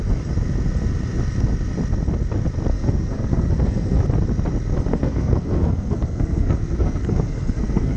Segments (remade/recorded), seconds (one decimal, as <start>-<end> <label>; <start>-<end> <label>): 0.0-2.7 recorded; 2.7-4.0 remade; 4.0-4.9 recorded; 4.9-8.0 remade